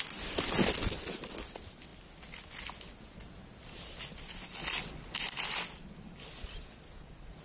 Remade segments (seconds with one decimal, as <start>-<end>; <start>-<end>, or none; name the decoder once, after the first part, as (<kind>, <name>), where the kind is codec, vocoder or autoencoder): none